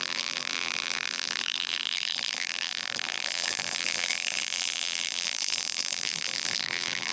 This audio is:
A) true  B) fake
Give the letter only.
B